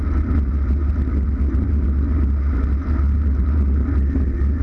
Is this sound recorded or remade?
recorded